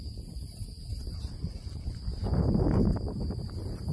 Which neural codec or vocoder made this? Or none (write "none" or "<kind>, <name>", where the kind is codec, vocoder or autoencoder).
vocoder, BigVGAN v2